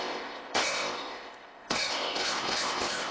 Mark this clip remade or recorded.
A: remade